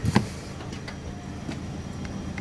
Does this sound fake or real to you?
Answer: real